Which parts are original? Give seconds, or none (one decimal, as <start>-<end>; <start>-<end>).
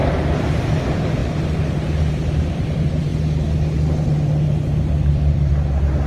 1.2-2.1; 3.1-4.8